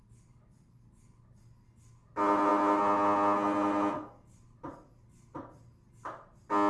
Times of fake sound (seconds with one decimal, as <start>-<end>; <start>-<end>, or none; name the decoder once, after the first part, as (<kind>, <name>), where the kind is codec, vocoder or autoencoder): none